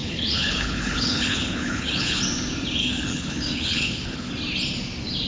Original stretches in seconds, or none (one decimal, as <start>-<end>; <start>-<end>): 2.2-2.8; 4.3-5.3